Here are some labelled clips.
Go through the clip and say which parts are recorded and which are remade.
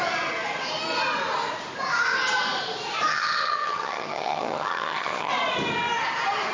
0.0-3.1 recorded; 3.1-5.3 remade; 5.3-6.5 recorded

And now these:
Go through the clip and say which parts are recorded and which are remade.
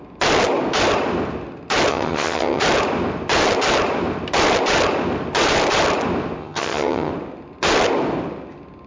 0.0-1.9 recorded; 1.9-2.6 remade; 2.6-6.4 recorded; 6.4-7.1 remade; 7.1-8.9 recorded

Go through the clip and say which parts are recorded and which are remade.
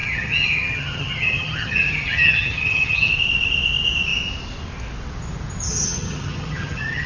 0.0-3.1 remade; 3.1-5.7 recorded; 5.7-7.1 remade